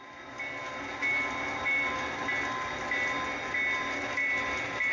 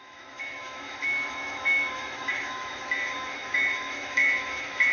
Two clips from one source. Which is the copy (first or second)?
second